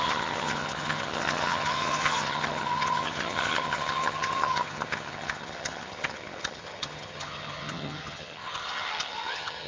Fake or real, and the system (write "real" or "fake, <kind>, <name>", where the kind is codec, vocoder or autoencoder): fake, vocoder, HiFi-GAN